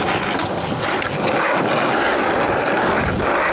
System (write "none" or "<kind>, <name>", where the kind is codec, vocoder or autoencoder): none